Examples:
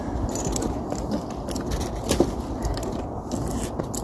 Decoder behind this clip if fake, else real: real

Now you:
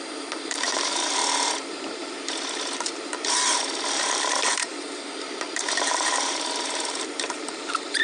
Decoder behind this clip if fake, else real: fake, vocoder, BigVGAN v2